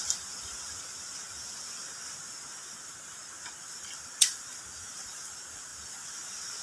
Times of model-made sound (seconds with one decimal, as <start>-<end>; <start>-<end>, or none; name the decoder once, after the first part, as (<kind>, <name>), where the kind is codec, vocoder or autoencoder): none